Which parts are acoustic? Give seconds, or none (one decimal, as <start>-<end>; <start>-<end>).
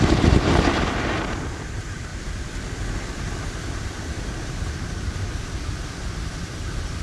0.0-7.0